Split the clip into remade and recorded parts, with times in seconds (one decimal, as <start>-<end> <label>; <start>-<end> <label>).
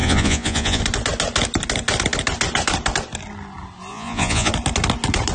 0.0-0.8 remade; 0.8-3.9 recorded; 3.9-4.5 remade; 4.5-5.3 recorded